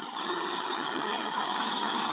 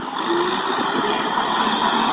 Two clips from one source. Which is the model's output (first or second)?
first